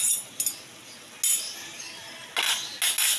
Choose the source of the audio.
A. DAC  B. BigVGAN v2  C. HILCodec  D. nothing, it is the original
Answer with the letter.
D